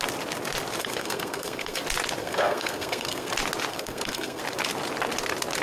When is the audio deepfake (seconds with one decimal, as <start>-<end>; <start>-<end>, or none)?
0.8-1.8; 2.2-3.3; 3.7-4.4